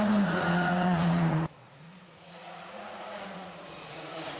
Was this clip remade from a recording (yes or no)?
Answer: yes